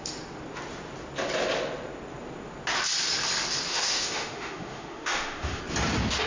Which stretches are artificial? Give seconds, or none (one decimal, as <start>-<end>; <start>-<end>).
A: 3.7-5.6